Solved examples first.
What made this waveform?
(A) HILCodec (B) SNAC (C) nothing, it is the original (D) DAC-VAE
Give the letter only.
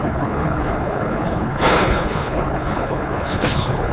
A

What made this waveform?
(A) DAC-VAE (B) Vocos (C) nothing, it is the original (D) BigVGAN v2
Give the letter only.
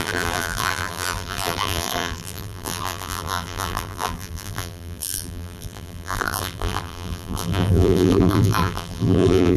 D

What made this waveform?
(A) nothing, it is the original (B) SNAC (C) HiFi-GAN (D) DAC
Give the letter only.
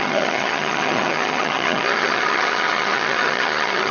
C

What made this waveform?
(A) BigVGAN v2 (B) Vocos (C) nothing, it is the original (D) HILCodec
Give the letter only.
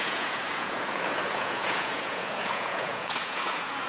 B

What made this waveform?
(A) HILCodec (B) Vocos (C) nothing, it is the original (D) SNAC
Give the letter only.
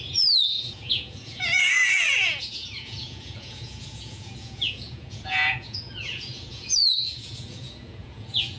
B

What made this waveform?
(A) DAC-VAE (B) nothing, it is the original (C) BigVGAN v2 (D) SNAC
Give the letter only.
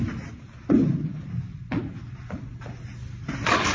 B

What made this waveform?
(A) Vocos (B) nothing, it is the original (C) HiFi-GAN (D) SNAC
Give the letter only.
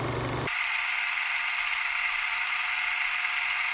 B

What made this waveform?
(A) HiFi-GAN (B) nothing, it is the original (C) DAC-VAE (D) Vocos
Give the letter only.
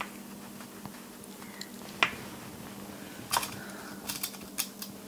B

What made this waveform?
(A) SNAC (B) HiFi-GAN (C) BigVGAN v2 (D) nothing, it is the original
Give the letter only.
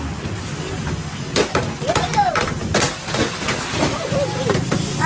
D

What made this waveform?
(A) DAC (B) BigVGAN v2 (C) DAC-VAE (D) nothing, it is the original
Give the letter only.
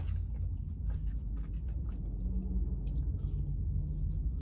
D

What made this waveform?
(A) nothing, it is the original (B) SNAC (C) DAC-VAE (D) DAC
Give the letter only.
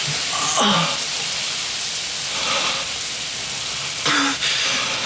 A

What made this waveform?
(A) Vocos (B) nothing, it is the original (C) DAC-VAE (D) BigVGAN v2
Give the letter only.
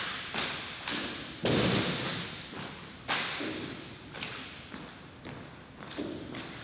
B